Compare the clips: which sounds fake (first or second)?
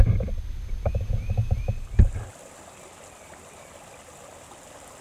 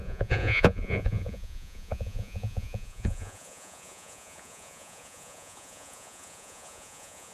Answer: second